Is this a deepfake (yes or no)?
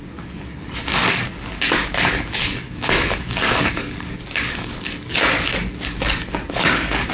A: yes